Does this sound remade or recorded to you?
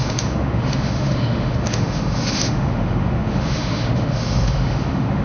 remade